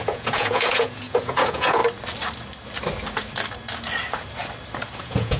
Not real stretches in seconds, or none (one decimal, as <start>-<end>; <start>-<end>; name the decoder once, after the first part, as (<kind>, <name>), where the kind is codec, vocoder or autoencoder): 0.0-1.8 (vocoder, Vocos); 5.0-5.4